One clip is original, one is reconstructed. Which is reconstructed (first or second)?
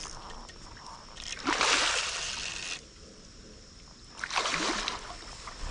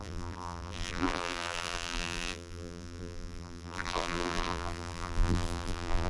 second